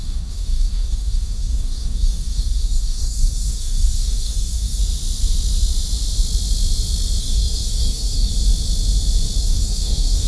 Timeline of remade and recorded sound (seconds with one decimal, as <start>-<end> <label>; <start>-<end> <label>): 0.0-4.8 remade; 4.8-7.2 recorded; 7.2-8.3 remade; 8.3-9.4 recorded; 9.4-10.3 remade